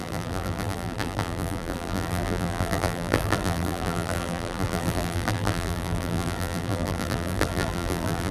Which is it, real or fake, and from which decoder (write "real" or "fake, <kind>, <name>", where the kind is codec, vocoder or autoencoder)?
fake, vocoder, BigVGAN v2